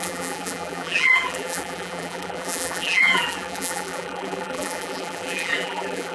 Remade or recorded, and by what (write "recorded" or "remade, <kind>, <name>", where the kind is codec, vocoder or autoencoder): remade, vocoder, BigVGAN v2